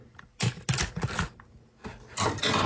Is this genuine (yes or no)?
yes